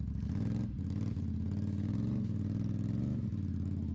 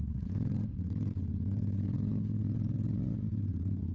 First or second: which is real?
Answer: first